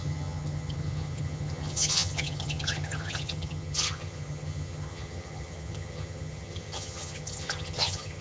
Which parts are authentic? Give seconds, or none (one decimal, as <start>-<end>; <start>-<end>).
none